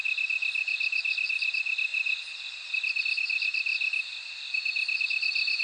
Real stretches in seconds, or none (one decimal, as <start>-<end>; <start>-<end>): 1.9-3.0; 3.7-5.0

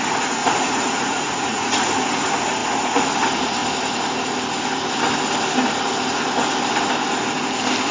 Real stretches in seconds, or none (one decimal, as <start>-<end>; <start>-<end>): 0.0-0.4; 1.9-7.9

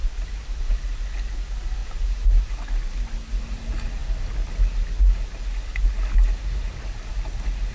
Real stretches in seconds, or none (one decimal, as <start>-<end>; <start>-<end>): 0.0-1.8; 2.5-7.7

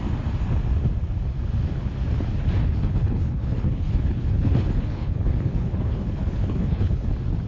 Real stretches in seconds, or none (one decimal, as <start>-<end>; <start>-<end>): 0.0-2.6; 7.1-7.5

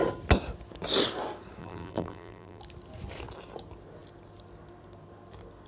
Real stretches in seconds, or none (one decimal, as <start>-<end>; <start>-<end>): 0.0-1.6; 2.6-5.7

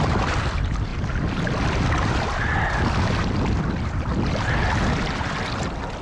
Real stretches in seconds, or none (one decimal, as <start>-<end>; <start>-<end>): 0.0-6.0

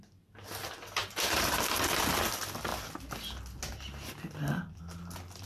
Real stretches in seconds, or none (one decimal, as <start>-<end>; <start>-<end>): 0.0-1.0; 1.6-5.5